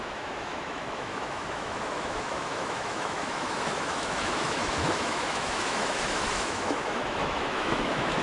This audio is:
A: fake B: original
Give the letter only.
A